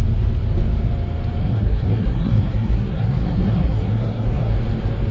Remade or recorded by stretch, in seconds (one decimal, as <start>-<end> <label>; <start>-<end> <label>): 0.0-1.4 recorded; 1.4-4.5 remade; 4.5-5.1 recorded